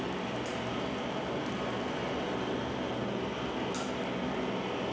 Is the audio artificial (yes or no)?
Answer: no